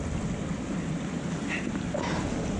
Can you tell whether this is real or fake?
real